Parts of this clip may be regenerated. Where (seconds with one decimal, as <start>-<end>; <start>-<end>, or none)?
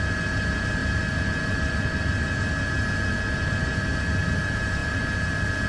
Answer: none